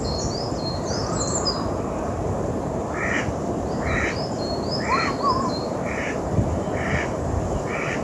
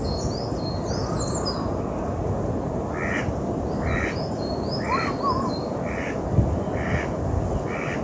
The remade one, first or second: first